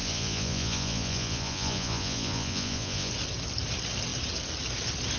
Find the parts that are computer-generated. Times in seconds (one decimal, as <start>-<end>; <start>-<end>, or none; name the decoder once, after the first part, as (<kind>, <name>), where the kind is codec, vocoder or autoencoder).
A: 0.0-3.1 (vocoder, Vocos)